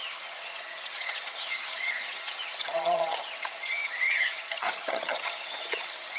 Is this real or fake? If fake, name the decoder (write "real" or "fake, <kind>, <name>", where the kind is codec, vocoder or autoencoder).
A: fake, vocoder, HiFi-GAN